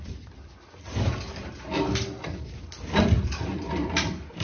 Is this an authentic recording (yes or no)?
yes